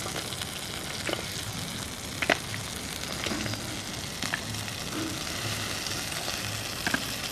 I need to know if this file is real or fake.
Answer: real